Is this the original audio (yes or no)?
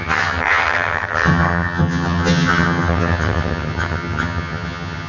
no